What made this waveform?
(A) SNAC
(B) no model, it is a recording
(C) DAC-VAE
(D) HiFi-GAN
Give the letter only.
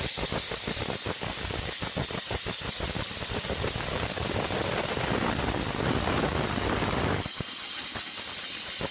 B